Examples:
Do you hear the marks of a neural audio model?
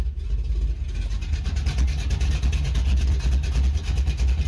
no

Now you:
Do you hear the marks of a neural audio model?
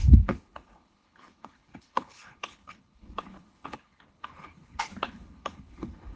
yes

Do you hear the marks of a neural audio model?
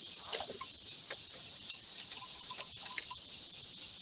no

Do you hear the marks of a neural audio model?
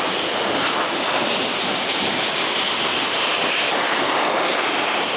no